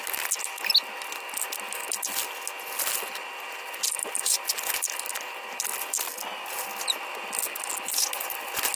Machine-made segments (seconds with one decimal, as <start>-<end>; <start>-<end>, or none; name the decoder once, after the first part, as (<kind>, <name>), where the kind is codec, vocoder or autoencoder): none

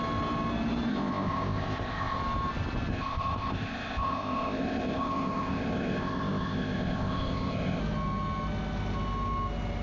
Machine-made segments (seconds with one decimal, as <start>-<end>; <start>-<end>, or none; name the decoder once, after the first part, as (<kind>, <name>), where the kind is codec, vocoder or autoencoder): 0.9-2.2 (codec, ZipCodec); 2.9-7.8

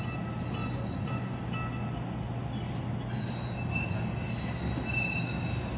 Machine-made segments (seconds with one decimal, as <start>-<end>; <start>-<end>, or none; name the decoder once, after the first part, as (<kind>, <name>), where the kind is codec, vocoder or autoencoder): 0.6-1.4 (vocoder, Vocos)

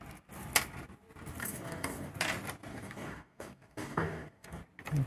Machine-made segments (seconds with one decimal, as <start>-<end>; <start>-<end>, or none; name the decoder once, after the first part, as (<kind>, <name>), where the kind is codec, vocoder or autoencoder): 1.4-2.1 (codec, DAC); 2.7-4.6

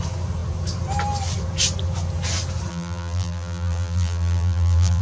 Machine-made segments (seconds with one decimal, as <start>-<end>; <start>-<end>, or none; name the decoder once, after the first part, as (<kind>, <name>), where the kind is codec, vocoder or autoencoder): 2.7-5.0 (vocoder, BigVGAN v2)

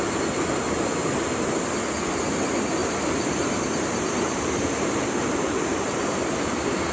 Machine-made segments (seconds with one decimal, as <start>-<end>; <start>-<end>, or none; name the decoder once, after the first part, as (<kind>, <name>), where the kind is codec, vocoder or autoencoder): 2.8-6.9 (vocoder, BigVGAN v2)

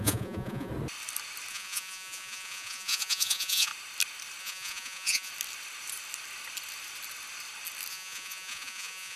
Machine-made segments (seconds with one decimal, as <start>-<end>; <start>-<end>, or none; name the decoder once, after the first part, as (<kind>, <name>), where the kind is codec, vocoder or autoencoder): 0.0-0.7 (vocoder, Vocos); 1.5-3.7; 4.4-5.3; 7.9-9.2

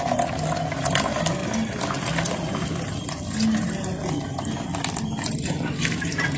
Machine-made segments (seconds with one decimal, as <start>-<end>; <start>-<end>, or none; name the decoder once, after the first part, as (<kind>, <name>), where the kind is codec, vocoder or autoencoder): none